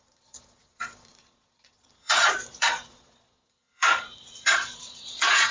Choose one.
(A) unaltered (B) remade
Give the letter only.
B